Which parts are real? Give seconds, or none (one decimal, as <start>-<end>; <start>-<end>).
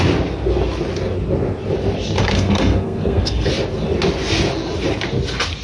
0.0-2.2; 3.5-5.6